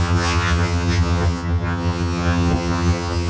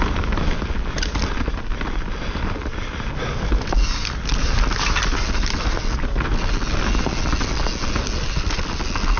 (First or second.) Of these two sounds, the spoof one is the first